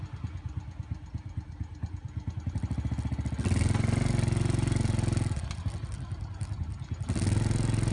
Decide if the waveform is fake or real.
real